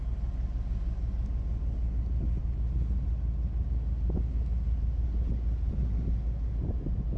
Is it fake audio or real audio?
real